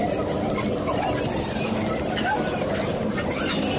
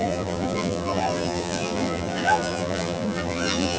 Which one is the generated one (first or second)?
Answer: second